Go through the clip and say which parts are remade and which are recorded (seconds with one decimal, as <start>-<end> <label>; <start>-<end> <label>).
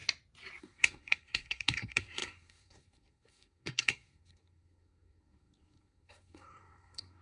0.0-0.6 recorded; 0.6-7.2 remade